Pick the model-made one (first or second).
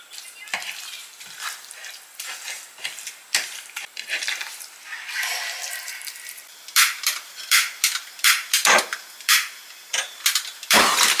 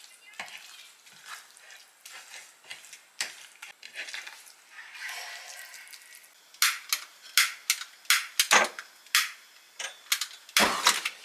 first